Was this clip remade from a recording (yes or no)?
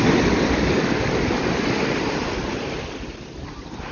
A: no